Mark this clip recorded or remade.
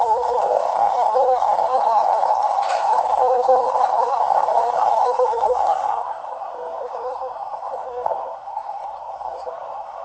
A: remade